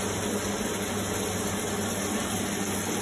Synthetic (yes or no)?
no